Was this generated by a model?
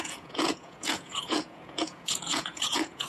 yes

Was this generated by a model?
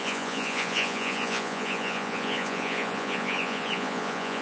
yes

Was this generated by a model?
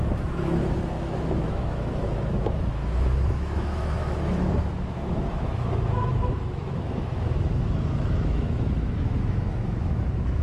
yes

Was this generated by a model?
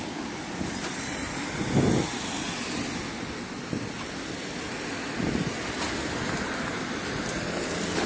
no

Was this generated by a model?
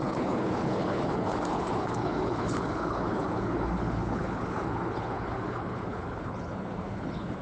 yes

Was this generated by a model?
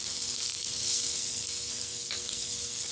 yes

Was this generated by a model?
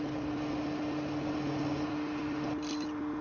no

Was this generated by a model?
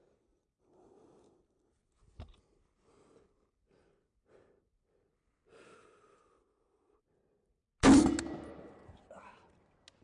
no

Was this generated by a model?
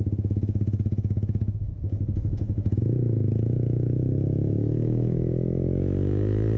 yes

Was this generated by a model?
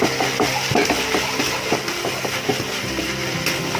no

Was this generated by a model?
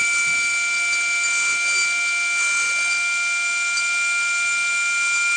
no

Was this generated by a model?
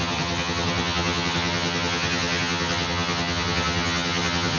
yes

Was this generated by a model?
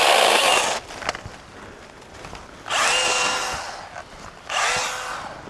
no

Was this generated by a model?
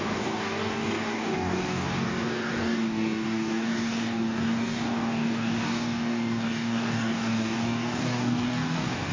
yes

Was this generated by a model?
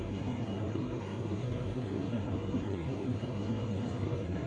yes